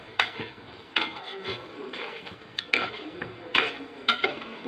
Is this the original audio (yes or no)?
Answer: no